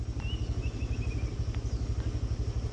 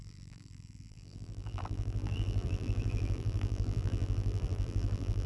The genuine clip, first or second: first